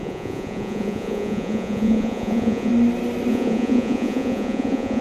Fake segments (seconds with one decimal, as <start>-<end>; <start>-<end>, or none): 0.0-2.7; 3.3-5.0